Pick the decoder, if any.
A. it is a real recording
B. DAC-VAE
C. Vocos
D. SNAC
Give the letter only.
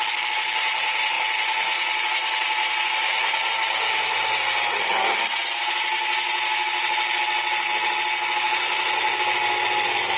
A